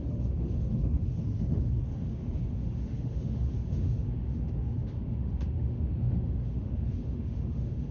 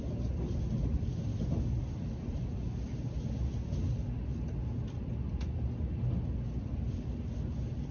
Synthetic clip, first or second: first